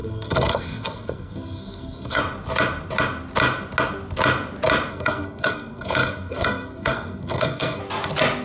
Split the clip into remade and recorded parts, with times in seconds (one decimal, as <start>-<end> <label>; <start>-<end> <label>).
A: 0.0-2.2 remade; 2.2-4.9 recorded; 4.9-7.8 remade; 7.8-8.4 recorded